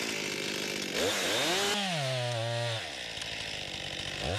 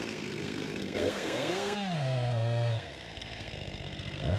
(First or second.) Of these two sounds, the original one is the first